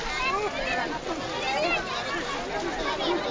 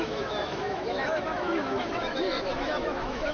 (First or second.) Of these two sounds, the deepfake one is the second